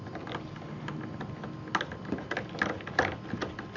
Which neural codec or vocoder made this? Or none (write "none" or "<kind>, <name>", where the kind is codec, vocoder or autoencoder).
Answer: none